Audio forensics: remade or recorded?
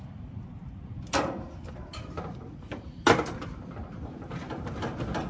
recorded